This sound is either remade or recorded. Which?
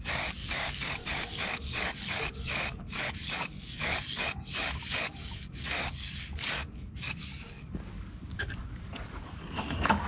remade